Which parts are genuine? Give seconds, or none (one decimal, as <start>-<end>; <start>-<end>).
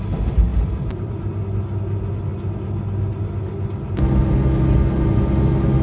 0.0-0.5; 1.3-5.8